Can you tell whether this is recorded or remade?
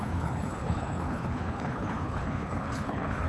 remade